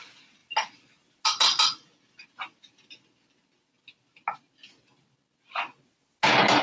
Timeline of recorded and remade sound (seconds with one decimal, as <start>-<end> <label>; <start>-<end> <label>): 0.0-6.6 recorded